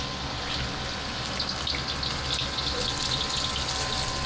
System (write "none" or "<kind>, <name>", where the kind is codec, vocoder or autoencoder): none